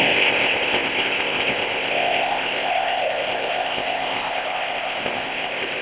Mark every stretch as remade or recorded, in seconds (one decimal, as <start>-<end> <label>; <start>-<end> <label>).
0.0-5.8 remade